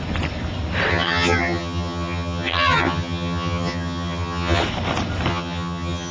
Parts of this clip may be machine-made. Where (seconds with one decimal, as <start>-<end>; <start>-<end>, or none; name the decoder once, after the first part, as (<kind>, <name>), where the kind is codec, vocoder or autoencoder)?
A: 0.9-4.6 (vocoder, HiFi-GAN); 5.3-6.1